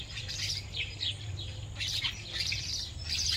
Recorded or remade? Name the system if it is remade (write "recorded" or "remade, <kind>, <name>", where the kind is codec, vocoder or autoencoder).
remade, vocoder, BigVGAN v2